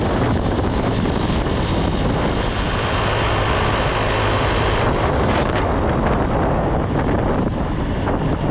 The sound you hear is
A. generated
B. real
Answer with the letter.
B